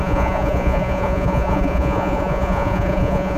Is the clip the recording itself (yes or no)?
no